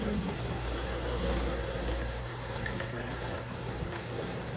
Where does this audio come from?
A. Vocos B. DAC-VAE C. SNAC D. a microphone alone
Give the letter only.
C